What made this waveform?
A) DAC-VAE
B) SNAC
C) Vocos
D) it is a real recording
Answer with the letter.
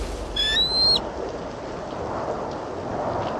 D